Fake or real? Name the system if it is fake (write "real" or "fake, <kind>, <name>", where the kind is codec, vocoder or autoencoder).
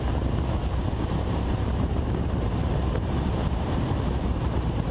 fake, vocoder, BigVGAN v2